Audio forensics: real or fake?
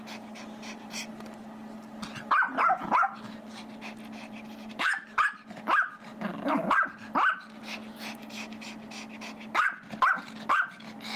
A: real